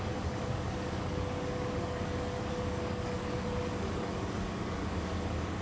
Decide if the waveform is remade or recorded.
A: remade